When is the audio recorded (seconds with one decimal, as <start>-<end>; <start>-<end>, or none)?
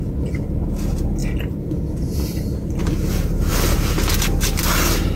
0.0-5.2